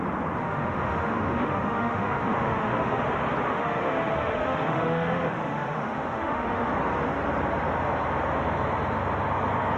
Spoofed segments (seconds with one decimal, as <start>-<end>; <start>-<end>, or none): 0.4-3.0; 3.5-6.7